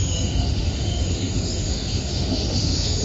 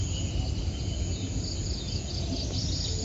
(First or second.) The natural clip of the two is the second